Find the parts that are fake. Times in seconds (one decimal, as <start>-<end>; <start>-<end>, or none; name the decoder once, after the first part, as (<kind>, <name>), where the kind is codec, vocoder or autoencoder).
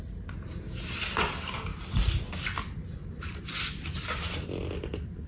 none